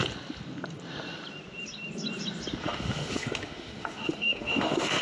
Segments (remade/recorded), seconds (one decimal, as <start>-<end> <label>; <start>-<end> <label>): 0.0-2.6 recorded; 2.6-5.0 remade